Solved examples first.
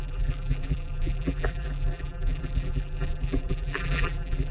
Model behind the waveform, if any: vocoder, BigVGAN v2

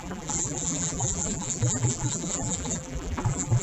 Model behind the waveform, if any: vocoder, BigVGAN v2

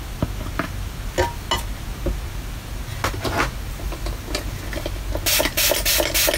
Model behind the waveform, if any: none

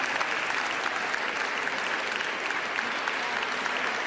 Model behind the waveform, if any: none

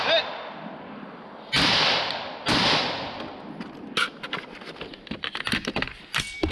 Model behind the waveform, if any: none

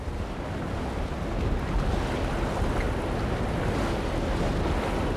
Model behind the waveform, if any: none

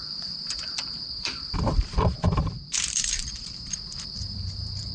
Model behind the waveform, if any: vocoder, BigVGAN v2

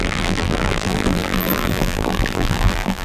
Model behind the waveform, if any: vocoder, BigVGAN v2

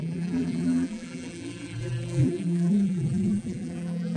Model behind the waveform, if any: vocoder, BigVGAN v2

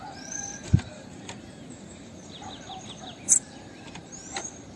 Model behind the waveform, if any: vocoder, BigVGAN v2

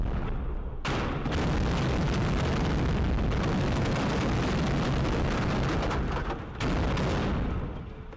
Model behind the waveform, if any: none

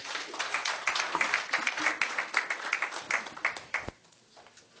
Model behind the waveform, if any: none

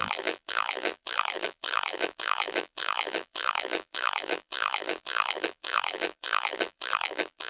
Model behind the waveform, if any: vocoder, BigVGAN v2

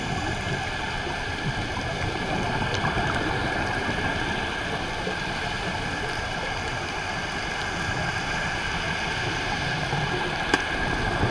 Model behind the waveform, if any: vocoder, BigVGAN v2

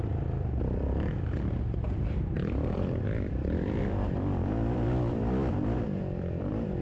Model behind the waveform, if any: vocoder, BigVGAN v2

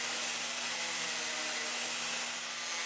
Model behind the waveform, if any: none